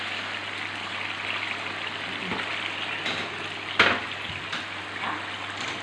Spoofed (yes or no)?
no